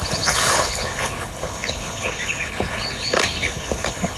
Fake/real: fake